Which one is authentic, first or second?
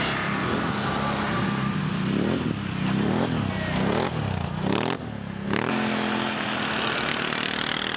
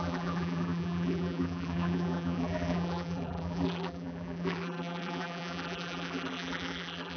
first